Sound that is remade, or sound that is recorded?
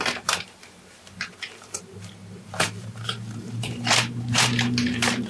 remade